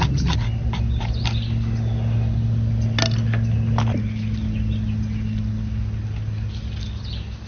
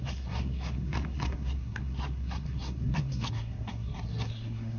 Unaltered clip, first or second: first